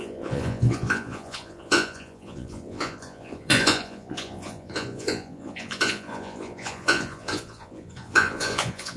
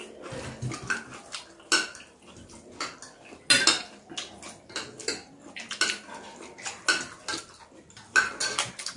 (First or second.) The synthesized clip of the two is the first